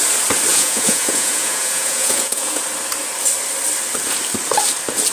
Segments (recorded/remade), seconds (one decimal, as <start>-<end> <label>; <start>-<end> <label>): 0.0-0.5 recorded; 0.5-2.6 remade; 2.6-5.1 recorded